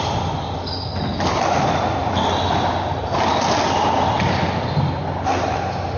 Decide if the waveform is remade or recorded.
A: recorded